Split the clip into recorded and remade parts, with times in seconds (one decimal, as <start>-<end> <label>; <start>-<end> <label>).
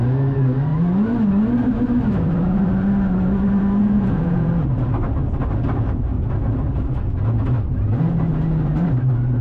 0.0-3.8 recorded; 3.8-4.5 remade; 4.5-9.4 recorded